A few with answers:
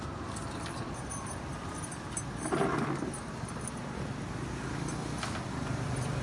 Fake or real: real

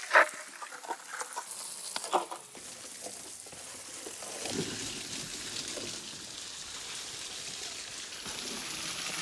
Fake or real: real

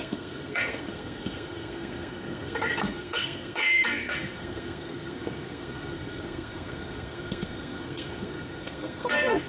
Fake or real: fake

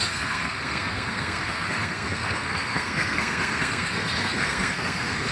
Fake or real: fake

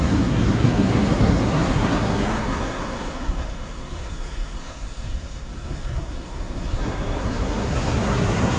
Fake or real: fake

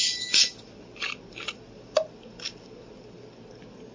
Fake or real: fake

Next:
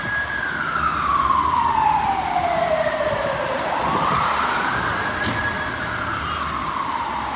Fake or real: real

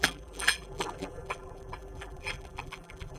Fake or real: fake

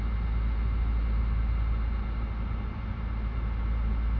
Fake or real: real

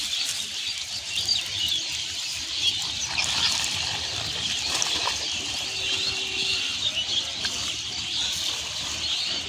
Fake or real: real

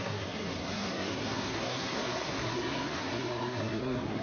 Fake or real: fake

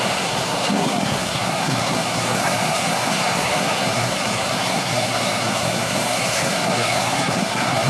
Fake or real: fake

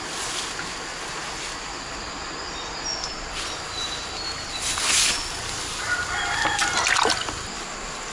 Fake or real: real